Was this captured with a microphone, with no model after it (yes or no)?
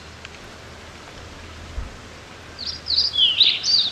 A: yes